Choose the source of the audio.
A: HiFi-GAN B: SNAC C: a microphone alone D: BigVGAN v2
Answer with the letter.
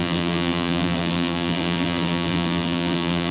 D